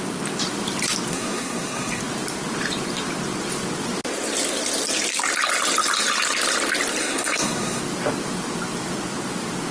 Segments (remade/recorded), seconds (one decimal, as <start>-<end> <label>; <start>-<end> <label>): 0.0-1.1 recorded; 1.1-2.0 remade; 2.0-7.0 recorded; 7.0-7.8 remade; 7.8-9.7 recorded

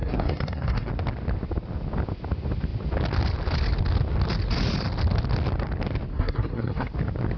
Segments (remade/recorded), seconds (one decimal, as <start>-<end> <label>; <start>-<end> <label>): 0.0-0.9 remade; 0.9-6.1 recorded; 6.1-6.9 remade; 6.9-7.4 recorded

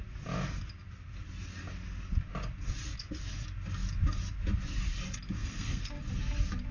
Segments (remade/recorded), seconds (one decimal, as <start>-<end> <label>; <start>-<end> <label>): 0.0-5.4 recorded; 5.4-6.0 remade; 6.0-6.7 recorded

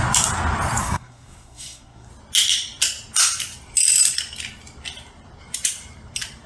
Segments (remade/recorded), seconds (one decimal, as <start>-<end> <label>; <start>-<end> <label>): 0.0-0.8 recorded; 0.8-2.1 remade; 2.1-6.5 recorded

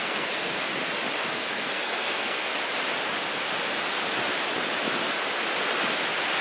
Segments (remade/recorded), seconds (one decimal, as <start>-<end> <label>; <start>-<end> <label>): 0.0-0.7 remade; 0.7-1.3 recorded; 1.3-2.5 remade; 2.5-6.4 recorded

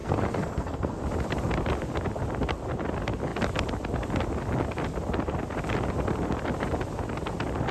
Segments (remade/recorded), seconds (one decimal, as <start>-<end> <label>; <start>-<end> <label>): 0.0-1.0 remade; 1.0-7.7 recorded